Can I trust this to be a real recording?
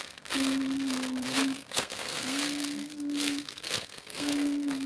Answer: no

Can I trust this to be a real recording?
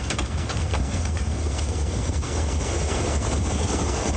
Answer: no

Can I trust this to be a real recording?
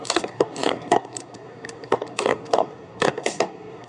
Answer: no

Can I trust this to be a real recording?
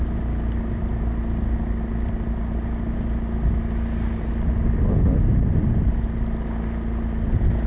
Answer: yes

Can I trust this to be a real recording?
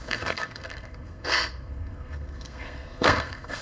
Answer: no